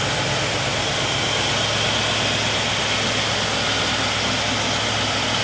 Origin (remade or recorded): recorded